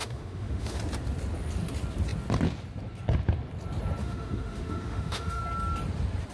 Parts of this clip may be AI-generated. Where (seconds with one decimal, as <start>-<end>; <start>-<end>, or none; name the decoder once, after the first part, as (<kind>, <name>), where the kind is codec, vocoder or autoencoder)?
0.0-0.8 (autoencoder, DAC-VAE); 4.0-5.4